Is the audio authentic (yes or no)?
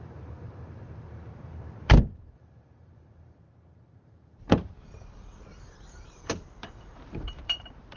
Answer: no